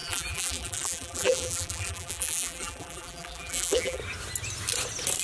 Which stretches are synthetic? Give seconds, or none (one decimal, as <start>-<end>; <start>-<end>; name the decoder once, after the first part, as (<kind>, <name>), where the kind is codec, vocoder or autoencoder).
0.0-4.0 (vocoder, BigVGAN v2)